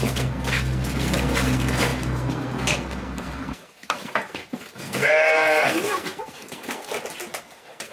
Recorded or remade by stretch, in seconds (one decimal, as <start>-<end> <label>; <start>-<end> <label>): 0.0-6.9 remade; 6.9-7.4 recorded; 7.4-7.9 remade